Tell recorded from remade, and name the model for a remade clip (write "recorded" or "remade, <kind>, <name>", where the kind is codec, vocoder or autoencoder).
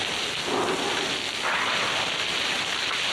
recorded